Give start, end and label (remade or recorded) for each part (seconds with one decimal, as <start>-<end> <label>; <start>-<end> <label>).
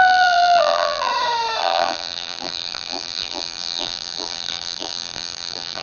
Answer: 0.0-1.1 remade; 1.1-1.6 recorded; 1.6-5.8 remade